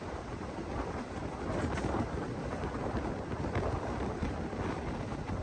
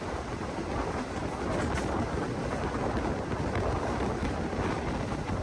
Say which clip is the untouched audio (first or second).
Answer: second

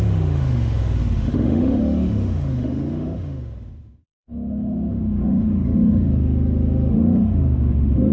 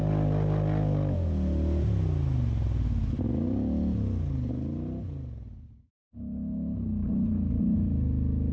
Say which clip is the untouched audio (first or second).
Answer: second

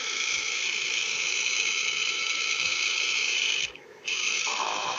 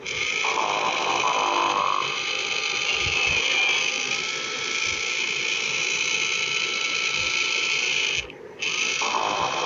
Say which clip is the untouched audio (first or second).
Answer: second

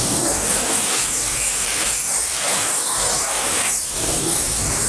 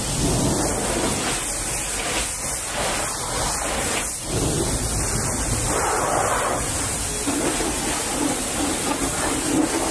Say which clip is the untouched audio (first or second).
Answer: second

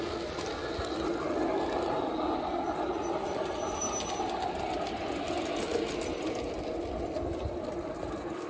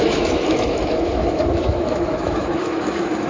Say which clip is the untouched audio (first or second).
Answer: first